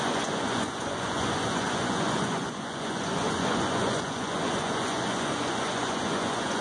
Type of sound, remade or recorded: remade